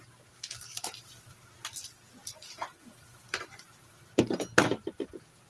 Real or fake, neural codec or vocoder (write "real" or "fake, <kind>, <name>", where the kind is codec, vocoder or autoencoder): real